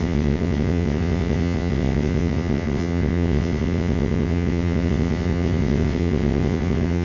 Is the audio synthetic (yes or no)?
yes